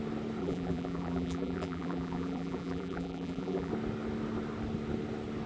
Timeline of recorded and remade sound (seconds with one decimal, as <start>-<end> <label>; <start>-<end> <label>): 0.0-0.4 recorded; 0.4-3.7 remade; 3.7-5.5 recorded